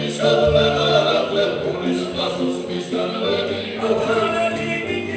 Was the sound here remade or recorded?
remade